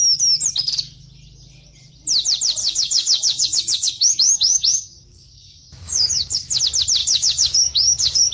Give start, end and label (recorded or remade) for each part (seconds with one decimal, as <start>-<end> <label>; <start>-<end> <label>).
0.0-2.6 recorded; 2.6-6.6 remade; 6.6-7.0 recorded; 7.0-8.3 remade